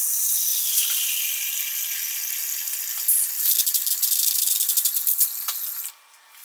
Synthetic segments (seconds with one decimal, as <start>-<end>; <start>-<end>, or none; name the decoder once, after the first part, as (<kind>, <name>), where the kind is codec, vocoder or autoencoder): 0.5-1.2 (vocoder, BigVGAN v2)